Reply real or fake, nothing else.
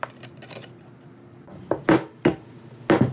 real